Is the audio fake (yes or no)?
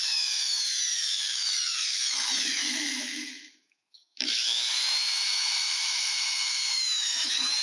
yes